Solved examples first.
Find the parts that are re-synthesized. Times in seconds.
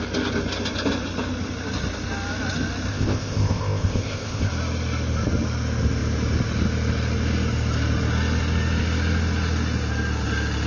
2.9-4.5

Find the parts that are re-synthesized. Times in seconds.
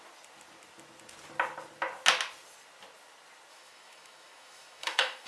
3.5-5.3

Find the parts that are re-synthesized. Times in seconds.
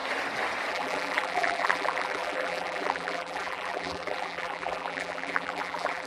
0.7-6.1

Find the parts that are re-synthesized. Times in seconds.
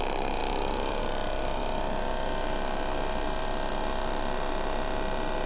0.4-1.0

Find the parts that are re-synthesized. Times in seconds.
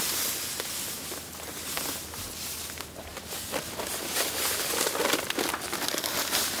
none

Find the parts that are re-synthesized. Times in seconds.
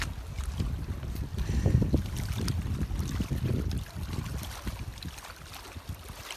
1.3-4.7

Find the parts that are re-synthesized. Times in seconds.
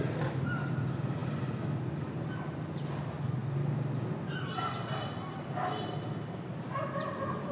none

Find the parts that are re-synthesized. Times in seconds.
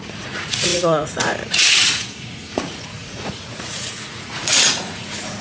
0.0-5.4